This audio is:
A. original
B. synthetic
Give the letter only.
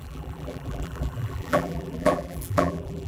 B